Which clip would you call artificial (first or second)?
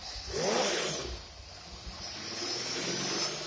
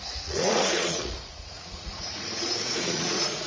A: second